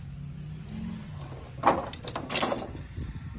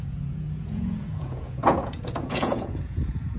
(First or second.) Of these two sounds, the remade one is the second